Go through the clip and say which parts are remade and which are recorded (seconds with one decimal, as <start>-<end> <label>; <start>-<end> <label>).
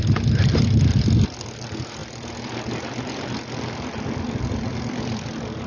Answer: 0.0-5.7 recorded